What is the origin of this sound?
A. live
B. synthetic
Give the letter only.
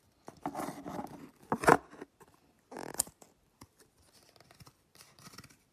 A